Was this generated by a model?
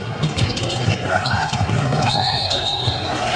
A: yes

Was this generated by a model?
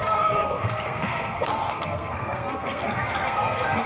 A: yes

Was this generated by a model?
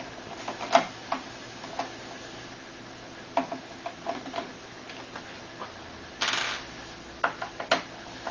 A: no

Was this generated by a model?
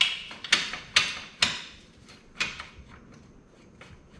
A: no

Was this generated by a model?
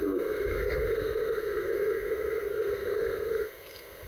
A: yes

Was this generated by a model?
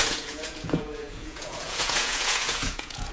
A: yes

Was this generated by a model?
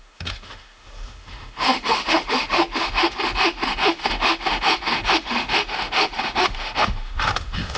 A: yes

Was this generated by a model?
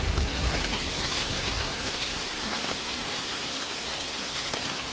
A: yes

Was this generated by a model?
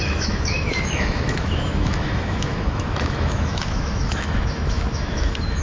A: yes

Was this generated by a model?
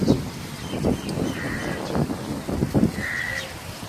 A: no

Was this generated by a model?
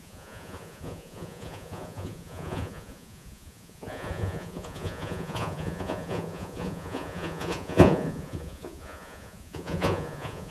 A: yes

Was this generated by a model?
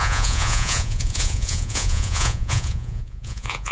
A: yes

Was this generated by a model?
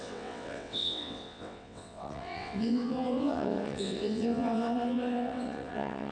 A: yes